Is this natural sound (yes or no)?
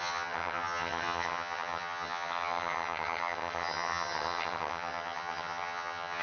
no